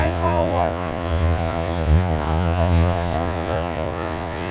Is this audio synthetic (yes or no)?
yes